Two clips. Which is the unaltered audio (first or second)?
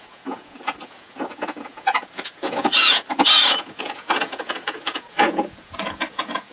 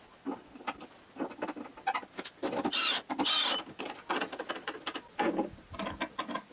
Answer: second